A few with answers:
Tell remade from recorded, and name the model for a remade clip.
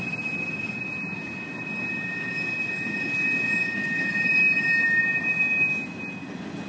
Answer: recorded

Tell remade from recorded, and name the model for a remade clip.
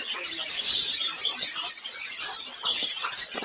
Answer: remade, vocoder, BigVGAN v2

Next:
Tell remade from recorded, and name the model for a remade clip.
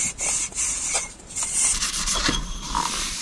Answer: remade, vocoder, BigVGAN v2